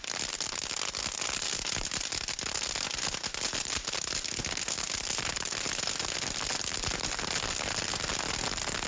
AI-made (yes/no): no